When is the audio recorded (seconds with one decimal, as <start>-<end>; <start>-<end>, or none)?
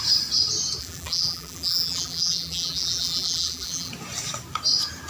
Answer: 0.0-0.8; 3.9-5.1